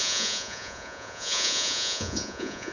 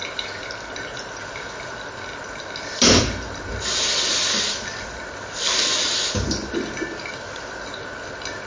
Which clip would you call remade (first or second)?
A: first